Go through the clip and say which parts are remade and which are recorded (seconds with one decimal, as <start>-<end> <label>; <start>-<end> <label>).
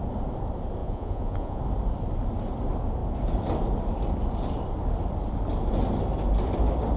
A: 0.0-0.8 recorded; 0.8-1.6 remade; 1.6-7.0 recorded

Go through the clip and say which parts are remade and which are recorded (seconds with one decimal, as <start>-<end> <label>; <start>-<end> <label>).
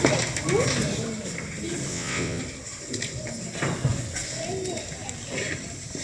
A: 0.0-1.9 recorded; 1.9-2.4 remade; 2.4-6.0 recorded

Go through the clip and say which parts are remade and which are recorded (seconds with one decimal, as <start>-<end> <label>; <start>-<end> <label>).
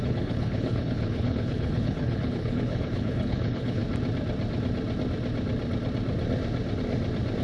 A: 0.0-3.8 remade; 3.8-7.4 recorded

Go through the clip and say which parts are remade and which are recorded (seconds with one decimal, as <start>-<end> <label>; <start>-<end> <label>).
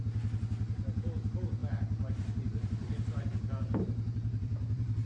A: 0.0-1.6 recorded; 1.6-5.1 remade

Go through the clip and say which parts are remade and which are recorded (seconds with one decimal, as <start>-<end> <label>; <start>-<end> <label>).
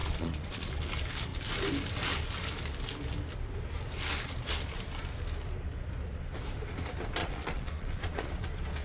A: 0.0-0.7 remade; 0.7-7.2 recorded; 7.2-8.3 remade; 8.3-8.8 recorded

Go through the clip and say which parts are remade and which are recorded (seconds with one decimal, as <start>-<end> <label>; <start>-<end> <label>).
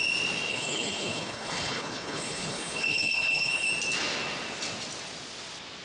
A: 0.0-0.5 recorded; 0.5-3.7 remade; 3.7-5.8 recorded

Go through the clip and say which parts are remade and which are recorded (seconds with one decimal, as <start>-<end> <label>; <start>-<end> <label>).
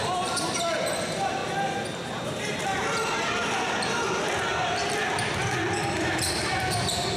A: 0.0-1.4 remade; 1.4-4.1 recorded; 4.1-7.2 remade